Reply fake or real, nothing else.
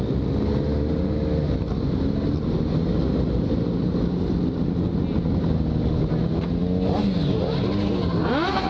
real